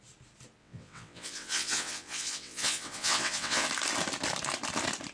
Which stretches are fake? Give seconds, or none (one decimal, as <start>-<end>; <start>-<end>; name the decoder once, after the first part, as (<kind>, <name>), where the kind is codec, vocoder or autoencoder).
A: 0.6-3.7 (vocoder, WaveNeXt)